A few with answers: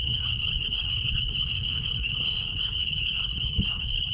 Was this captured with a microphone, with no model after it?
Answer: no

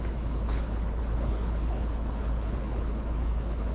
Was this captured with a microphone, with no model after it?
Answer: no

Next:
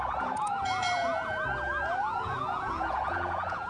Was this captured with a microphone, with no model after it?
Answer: no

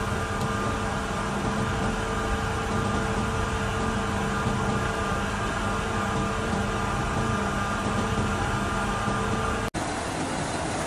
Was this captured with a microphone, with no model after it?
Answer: yes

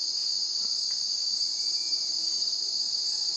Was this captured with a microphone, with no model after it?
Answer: yes